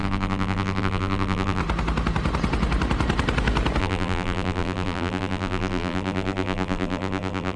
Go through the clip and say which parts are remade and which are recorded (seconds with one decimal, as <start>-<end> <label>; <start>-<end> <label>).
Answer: 0.0-1.6 remade; 1.6-3.8 recorded; 3.8-7.6 remade